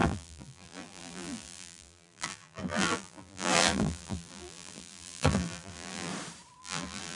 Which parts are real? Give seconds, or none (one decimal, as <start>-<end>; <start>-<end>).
6.1-6.6